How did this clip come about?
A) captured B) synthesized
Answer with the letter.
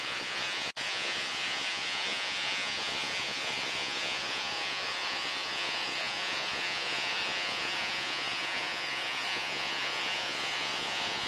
B